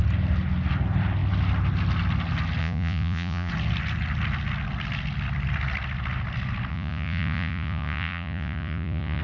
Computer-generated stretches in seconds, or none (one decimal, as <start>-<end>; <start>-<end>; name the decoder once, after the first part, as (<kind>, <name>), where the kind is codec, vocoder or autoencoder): 2.6-3.5 (vocoder, Vocos); 6.7-9.2